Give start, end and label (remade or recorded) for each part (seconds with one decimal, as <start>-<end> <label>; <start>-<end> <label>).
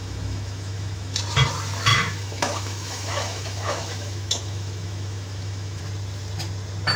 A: 0.0-1.2 remade; 1.2-1.9 recorded; 1.9-5.8 remade; 5.8-7.0 recorded